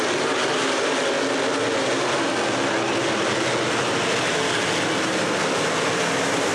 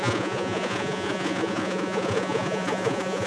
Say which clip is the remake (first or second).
second